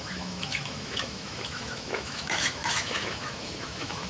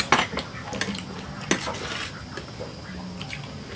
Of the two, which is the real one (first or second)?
second